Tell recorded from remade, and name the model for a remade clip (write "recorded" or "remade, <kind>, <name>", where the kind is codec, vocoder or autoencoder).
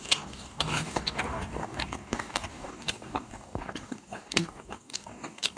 remade, codec, DAC